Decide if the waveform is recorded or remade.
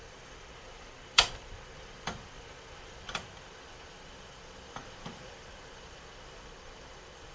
remade